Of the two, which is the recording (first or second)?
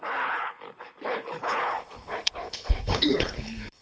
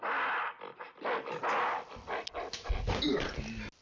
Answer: second